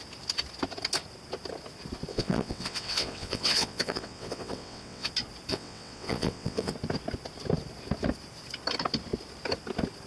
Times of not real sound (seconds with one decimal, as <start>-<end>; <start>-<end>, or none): 2.1-5.1; 5.5-6.7